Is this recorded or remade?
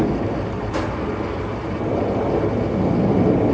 recorded